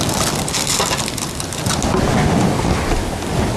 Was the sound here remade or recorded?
recorded